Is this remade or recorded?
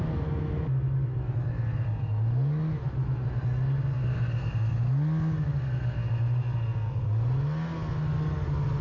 recorded